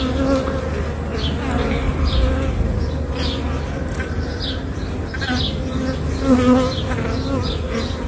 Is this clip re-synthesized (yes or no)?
no